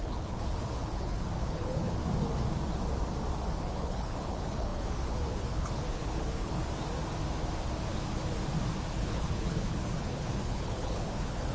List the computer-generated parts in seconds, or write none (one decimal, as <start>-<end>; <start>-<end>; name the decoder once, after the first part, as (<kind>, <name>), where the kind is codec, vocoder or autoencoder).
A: 0.0-2.0 (codec, HILCodec); 3.6-6.6; 8.9-11.5